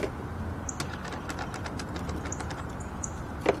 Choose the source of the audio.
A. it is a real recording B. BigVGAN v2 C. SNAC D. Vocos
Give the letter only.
A